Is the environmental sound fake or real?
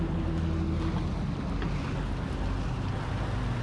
real